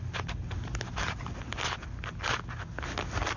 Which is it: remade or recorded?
recorded